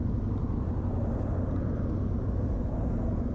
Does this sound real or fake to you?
real